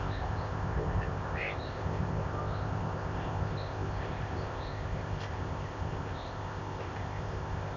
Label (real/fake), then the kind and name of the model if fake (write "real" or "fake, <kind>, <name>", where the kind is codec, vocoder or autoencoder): fake, codec, ZipCodec